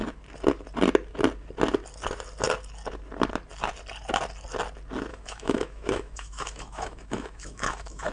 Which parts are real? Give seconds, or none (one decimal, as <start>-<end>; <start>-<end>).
0.0-5.1